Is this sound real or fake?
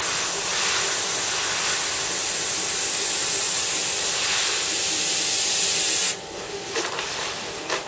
real